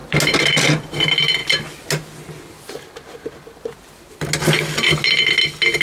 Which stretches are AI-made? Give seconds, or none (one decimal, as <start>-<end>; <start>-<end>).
none